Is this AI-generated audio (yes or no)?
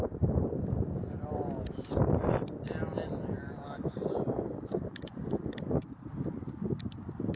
no